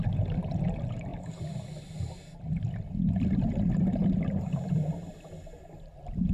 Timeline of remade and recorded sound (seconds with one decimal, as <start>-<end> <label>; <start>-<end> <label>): 0.0-1.1 recorded; 1.1-1.7 remade; 1.7-4.0 recorded; 4.0-5.1 remade; 5.1-6.3 recorded